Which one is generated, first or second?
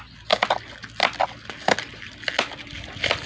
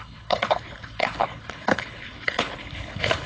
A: second